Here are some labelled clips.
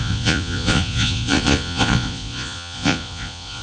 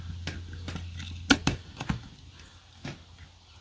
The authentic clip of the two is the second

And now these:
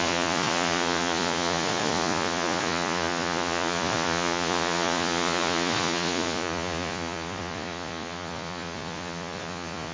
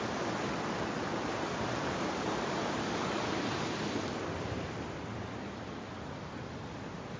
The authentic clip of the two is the second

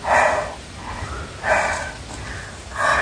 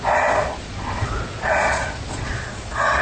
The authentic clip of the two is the first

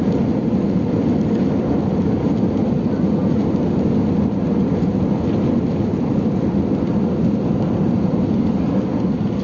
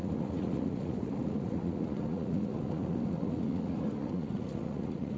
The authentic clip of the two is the first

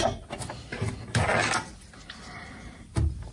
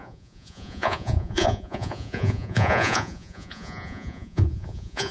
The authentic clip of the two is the first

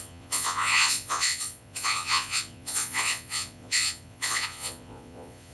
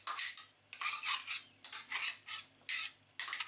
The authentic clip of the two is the second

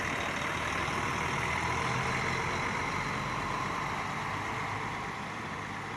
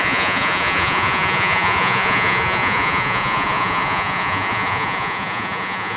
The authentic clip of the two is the first